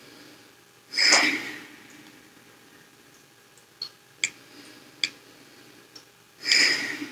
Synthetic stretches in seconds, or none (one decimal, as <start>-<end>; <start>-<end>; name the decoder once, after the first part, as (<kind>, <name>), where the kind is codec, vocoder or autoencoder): none